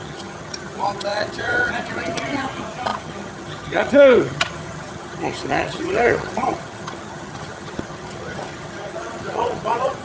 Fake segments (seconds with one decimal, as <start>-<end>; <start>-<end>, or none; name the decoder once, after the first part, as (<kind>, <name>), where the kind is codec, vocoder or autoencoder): 0.0-10.0 (vocoder, HiFi-GAN)